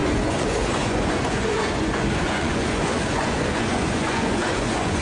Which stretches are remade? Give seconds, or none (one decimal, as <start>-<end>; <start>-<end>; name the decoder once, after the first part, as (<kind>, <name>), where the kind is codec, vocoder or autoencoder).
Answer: 0.0-5.0 (vocoder, Vocos)